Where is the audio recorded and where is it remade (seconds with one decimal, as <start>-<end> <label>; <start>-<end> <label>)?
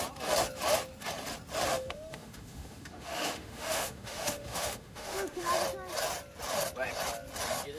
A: 0.0-1.7 recorded; 1.7-5.5 remade; 5.5-7.8 recorded